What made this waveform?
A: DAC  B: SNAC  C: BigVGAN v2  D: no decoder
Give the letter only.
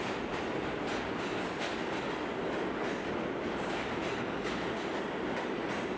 D